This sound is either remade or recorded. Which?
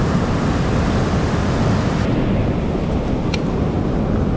recorded